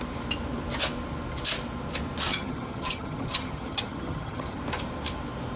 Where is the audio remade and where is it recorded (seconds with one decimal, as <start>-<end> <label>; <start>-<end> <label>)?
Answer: 0.0-2.3 recorded; 2.3-4.6 remade; 4.6-5.6 recorded